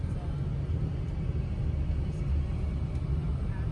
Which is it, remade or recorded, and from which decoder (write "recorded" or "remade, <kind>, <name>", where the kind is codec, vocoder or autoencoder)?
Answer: recorded